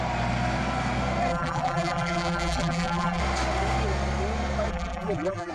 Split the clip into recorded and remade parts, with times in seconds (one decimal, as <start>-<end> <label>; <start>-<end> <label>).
0.0-1.3 recorded; 1.3-3.2 remade; 3.2-4.7 recorded; 4.7-5.5 remade